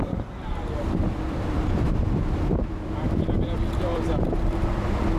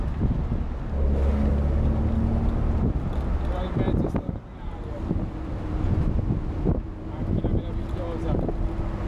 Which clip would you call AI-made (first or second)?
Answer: first